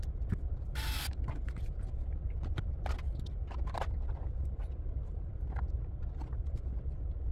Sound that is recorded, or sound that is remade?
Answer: recorded